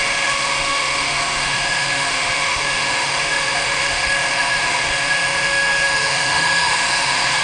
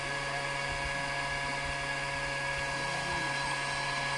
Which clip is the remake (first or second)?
first